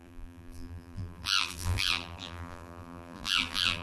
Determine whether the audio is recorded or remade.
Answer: remade